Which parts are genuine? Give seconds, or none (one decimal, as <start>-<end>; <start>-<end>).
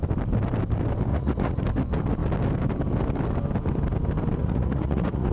0.0-1.1; 1.6-4.4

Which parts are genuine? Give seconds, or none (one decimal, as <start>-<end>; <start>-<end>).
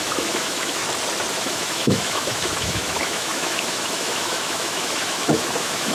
0.8-1.3